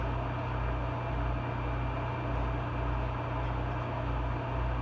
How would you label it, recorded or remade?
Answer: recorded